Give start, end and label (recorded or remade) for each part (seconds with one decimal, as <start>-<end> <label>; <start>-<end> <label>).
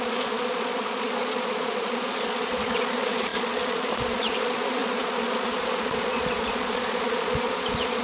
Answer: 0.0-8.0 remade